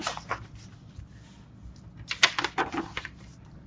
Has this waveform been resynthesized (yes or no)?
no